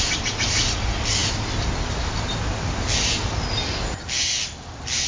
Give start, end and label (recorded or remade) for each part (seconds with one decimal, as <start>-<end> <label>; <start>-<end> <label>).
0.0-5.1 recorded